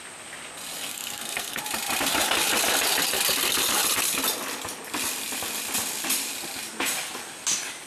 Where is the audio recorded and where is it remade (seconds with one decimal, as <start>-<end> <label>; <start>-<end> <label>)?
0.0-0.9 recorded; 0.9-1.6 remade; 1.6-7.9 recorded